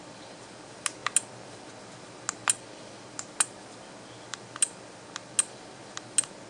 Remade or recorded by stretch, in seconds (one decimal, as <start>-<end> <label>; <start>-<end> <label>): 0.0-6.5 recorded